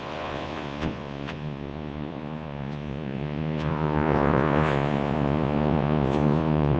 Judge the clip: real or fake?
fake